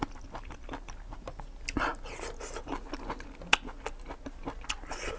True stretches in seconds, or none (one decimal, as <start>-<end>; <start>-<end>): 0.0-5.2